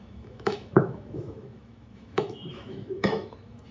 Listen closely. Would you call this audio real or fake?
fake